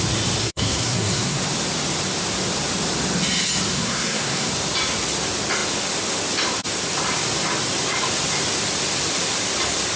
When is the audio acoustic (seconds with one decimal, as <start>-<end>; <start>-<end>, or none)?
0.0-0.4; 1.4-3.7; 4.5-10.0